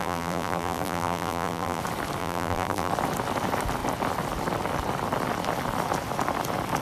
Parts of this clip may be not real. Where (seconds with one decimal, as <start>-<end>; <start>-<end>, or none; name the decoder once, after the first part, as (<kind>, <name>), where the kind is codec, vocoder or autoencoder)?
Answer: 0.0-1.8 (vocoder, BigVGAN v2); 2.2-2.9